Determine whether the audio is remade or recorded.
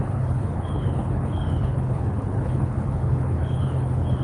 remade